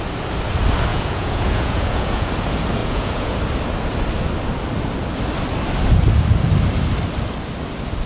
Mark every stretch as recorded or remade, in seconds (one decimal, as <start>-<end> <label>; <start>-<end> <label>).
0.0-0.9 recorded; 0.9-2.3 remade; 2.3-2.8 recorded; 2.8-3.4 remade; 3.4-8.1 recorded